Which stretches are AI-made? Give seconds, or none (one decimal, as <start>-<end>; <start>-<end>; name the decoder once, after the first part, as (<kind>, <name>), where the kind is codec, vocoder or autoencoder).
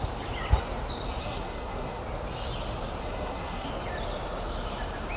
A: 1.2-2.0 (codec, SNAC); 3.0-3.7